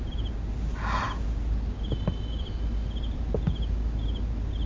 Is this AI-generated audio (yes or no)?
no